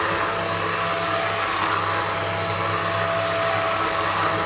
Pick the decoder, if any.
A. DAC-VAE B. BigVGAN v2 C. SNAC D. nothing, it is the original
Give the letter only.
D